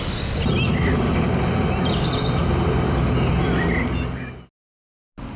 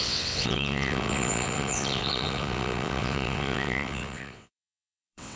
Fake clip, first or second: second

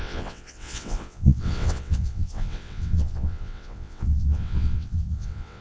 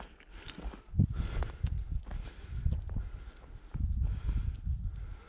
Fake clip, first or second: first